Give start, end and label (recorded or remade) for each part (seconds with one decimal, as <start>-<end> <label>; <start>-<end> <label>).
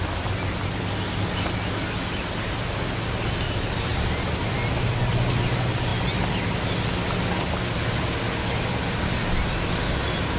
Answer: 0.0-10.4 recorded